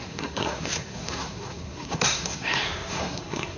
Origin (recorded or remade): remade